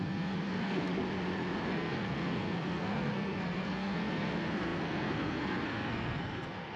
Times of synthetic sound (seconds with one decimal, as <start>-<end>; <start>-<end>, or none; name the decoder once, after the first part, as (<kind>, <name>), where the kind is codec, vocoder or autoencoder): 0.0-0.9 (codec, SNAC); 1.7-6.8